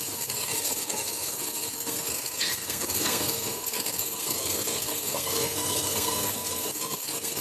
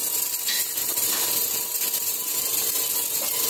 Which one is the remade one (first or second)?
first